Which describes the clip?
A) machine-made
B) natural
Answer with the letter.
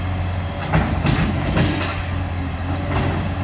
B